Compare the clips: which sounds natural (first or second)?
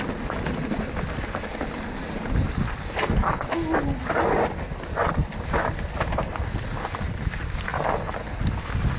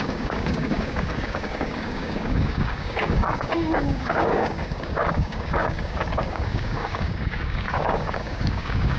first